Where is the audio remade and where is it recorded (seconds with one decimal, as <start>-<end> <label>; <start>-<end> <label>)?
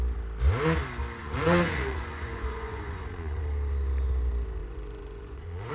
0.0-1.2 recorded; 1.2-3.4 remade; 3.4-4.6 recorded; 4.6-5.7 remade